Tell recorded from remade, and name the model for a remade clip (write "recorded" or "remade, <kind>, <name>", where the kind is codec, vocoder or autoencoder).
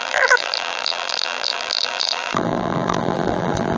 remade, vocoder, BigVGAN v2